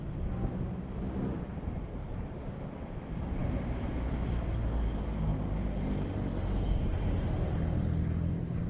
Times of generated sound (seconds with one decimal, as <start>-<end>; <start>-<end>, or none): 1.5-2.5; 5.3-5.8; 6.3-7.2